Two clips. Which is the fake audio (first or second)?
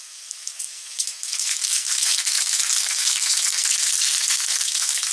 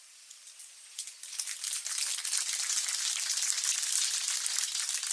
first